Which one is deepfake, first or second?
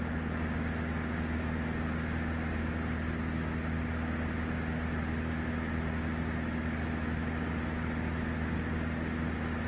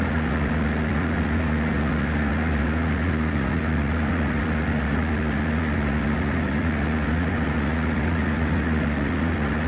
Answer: second